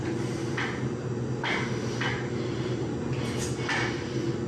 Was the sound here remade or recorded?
recorded